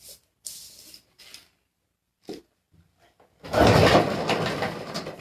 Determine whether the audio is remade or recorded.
recorded